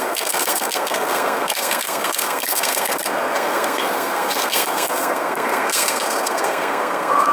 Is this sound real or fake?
fake